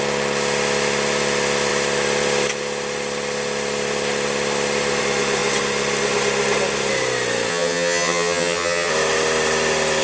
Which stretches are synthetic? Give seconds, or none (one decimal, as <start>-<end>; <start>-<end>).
7.5-8.9